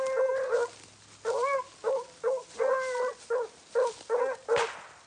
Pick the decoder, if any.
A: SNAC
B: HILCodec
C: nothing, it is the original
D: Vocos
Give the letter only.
C